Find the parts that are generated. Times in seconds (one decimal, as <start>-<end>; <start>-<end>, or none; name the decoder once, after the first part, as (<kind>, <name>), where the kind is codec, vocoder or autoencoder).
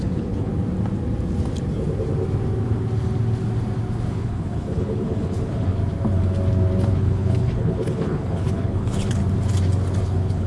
0.0-0.5 (codec, HILCodec); 4.1-5.8; 6.9-9.2; 10.0-10.5